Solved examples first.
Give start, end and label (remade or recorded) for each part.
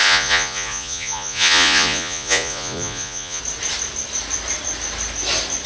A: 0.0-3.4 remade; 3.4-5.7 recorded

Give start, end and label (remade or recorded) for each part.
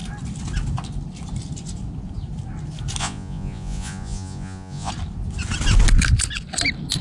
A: 0.0-3.0 recorded; 3.0-4.9 remade; 4.9-7.0 recorded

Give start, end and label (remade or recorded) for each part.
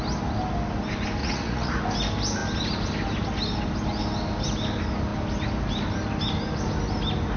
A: 0.0-1.2 recorded; 1.2-1.8 remade; 1.8-7.4 recorded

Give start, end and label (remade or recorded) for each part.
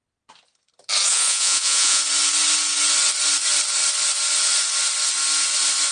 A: 0.0-1.1 recorded; 1.1-2.0 remade; 2.0-5.9 recorded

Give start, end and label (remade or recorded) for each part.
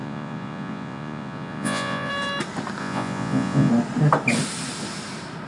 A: 0.0-2.1 remade; 2.1-2.8 recorded; 2.8-3.7 remade; 3.7-5.5 recorded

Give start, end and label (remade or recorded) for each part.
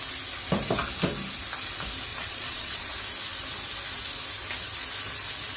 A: 0.0-2.1 recorded; 2.1-2.9 remade; 2.9-5.6 recorded